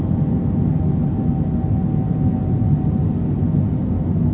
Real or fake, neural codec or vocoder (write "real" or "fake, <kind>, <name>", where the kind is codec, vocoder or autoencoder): real